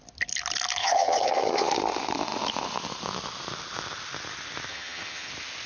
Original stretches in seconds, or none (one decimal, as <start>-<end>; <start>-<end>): 0.0-0.8; 1.7-4.7; 5.3-5.7